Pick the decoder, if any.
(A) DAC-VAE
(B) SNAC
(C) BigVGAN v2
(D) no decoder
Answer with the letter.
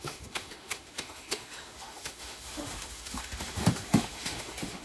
A